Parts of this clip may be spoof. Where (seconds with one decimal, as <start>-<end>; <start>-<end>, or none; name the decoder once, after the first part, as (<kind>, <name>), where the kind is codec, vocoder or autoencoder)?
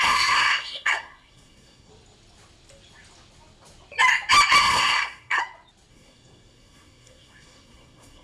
0.0-1.9 (codec, SNAC); 4.6-5.4; 5.9-8.2